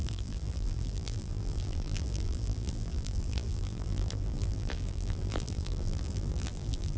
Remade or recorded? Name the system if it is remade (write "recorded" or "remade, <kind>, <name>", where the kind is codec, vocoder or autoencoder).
remade, vocoder, BigVGAN v2